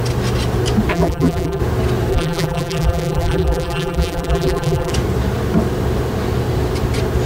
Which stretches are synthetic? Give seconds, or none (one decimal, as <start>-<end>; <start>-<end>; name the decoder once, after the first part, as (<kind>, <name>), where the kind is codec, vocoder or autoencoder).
0.9-1.6 (vocoder, BigVGAN v2); 2.1-4.9